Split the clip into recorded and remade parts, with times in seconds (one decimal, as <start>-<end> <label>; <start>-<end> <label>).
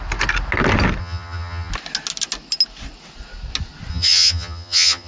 0.0-1.0 recorded; 1.0-1.7 remade; 1.7-3.9 recorded; 3.9-5.1 remade